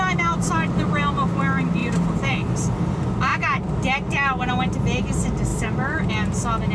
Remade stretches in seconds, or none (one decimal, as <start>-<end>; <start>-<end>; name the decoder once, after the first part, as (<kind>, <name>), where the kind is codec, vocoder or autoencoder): 1.8-2.9 (vocoder, BigVGAN v2)